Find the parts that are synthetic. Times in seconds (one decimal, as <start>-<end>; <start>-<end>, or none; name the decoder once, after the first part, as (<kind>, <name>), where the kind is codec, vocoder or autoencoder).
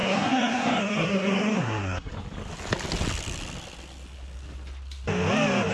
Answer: 0.0-2.1 (codec, SNAC)